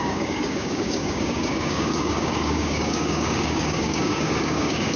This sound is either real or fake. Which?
fake